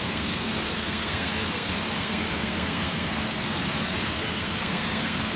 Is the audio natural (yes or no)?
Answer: no